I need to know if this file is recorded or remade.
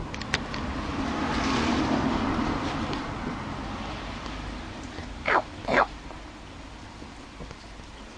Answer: remade